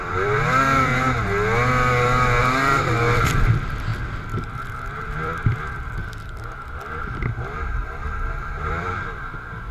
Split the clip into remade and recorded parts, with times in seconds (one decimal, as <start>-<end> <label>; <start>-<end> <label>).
0.0-0.9 remade; 0.9-2.4 recorded; 2.4-3.9 remade; 3.9-5.0 recorded; 5.0-5.5 remade; 5.5-6.5 recorded; 6.5-9.7 remade